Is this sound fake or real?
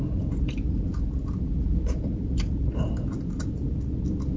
real